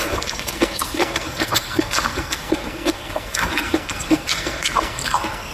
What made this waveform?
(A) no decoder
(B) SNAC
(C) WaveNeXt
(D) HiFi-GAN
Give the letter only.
B